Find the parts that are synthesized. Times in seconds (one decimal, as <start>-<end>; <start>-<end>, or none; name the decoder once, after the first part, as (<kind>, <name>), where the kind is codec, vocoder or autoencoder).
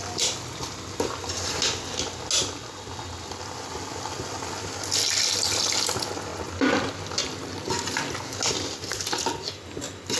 none